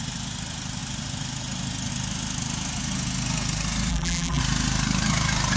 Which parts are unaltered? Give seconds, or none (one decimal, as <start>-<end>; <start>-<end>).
0.0-3.9; 4.4-5.6

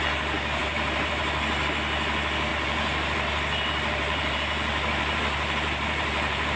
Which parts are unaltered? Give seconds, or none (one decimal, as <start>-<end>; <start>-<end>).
0.0-0.6; 1.2-2.5